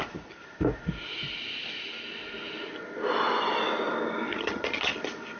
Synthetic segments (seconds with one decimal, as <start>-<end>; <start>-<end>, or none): 4.3-5.0